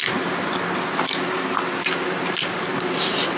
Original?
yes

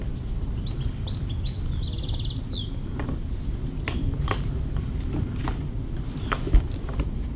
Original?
yes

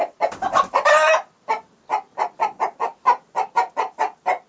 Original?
yes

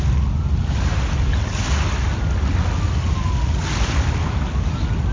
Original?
yes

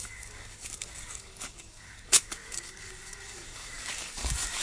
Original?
no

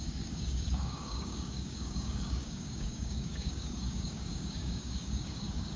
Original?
no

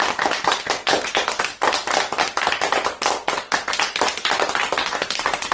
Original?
yes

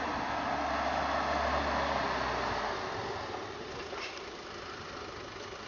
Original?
yes